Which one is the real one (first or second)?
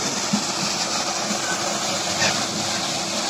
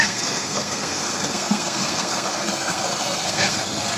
first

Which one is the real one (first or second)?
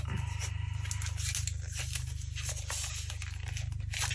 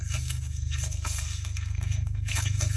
first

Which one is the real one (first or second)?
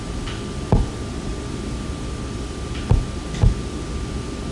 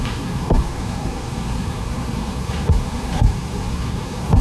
first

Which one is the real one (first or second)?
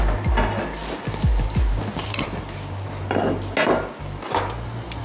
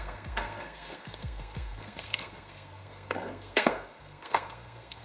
first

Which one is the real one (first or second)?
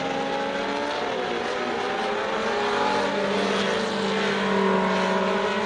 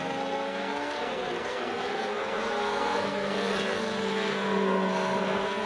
first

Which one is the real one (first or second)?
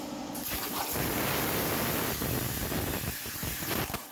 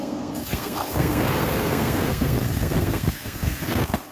first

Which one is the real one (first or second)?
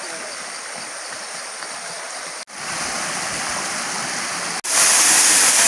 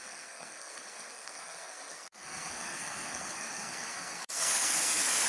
first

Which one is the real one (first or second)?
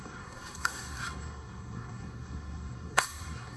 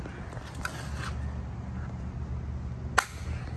second